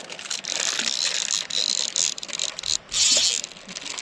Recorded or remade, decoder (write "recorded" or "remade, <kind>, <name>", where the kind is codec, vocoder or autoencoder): recorded